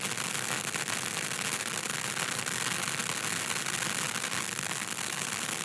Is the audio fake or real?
real